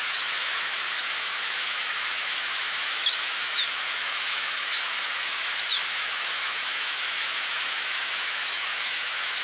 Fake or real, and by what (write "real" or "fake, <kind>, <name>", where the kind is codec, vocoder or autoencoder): fake, autoencoder, DAC-VAE